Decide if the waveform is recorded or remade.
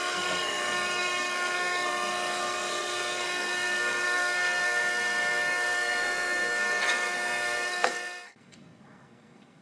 remade